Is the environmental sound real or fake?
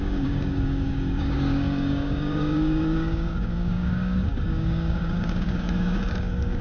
fake